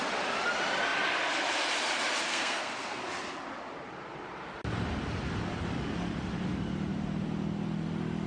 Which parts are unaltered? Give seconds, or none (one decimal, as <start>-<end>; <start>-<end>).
0.0-2.3; 3.0-8.3